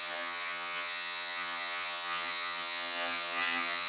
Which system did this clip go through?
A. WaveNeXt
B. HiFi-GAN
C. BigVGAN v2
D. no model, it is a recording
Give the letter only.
B